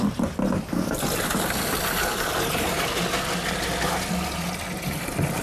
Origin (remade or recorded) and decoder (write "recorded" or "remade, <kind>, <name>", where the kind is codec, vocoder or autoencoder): recorded